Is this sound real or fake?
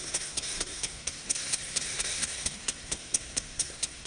fake